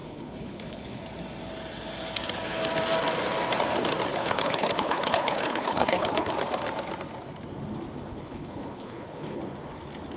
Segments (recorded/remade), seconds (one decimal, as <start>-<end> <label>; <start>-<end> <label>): 0.0-1.0 remade; 1.0-4.1 recorded; 4.1-6.3 remade; 6.3-8.1 recorded; 8.1-9.4 remade; 9.4-10.2 recorded